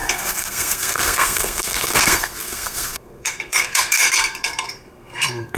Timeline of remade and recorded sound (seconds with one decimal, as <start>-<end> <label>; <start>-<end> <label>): 0.0-5.6 remade